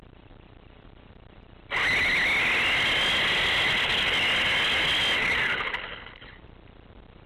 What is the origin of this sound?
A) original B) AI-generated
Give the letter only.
A